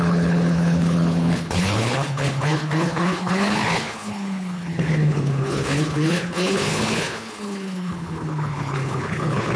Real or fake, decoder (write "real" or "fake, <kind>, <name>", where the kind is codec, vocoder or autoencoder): fake, codec, HILCodec